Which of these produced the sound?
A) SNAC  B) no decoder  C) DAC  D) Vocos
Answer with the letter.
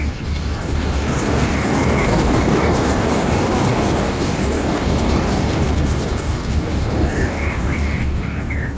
C